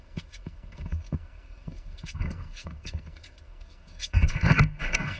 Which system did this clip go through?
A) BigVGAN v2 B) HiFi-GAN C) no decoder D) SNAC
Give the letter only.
D